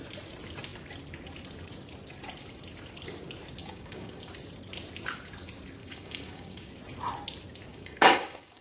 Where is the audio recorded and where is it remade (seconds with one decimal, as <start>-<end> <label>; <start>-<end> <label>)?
0.0-3.6 recorded; 3.6-4.3 remade; 4.3-5.8 recorded; 5.8-6.7 remade; 6.7-7.7 recorded; 7.7-8.6 remade